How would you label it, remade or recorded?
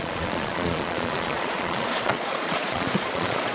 remade